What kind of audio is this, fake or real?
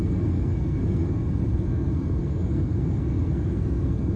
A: fake